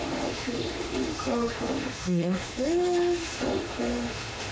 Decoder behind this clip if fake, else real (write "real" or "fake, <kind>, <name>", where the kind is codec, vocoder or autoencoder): fake, autoencoder, DAC-VAE